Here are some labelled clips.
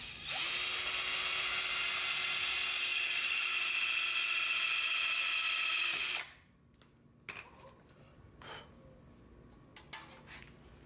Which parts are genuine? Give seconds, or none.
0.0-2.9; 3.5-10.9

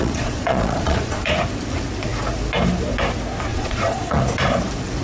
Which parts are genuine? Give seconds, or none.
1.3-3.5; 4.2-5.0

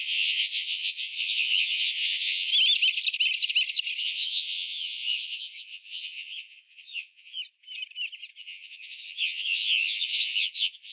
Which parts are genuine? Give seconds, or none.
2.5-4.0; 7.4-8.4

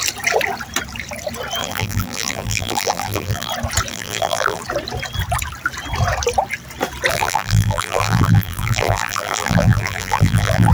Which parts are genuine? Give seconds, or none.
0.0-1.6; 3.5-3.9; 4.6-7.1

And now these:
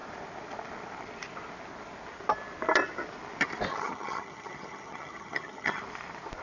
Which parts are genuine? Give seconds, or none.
0.0-3.7; 5.8-6.4